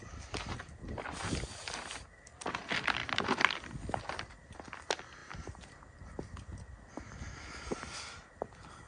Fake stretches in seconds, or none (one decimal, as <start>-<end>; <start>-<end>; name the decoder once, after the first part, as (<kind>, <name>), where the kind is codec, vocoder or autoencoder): none